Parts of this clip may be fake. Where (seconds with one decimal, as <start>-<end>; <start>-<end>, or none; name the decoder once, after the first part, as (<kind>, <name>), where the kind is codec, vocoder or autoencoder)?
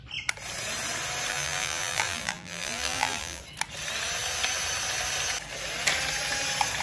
1.3-3.4 (vocoder, BigVGAN v2)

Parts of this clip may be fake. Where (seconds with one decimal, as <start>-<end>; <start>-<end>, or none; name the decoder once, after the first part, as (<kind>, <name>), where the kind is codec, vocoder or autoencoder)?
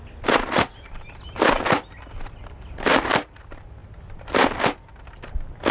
2.9-3.4 (vocoder, BigVGAN v2)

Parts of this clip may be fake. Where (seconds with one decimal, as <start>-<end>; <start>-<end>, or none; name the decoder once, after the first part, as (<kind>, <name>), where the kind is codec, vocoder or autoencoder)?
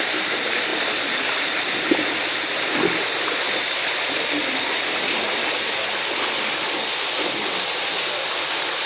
none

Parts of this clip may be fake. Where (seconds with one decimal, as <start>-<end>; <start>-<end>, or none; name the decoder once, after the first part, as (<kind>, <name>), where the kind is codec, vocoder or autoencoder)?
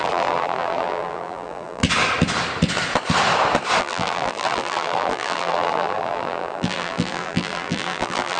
0.0-1.8 (vocoder, BigVGAN v2); 3.8-8.4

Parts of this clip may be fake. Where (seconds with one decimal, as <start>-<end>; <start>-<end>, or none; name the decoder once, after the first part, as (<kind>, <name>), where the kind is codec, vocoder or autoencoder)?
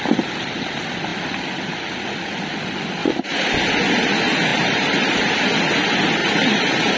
3.0-3.7 (vocoder, BigVGAN v2); 4.5-5.3; 6.2-7.0